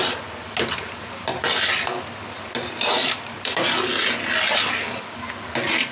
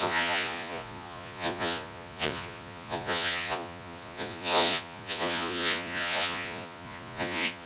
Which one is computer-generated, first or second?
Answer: second